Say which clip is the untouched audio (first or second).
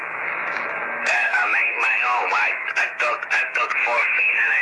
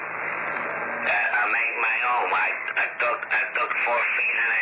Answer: second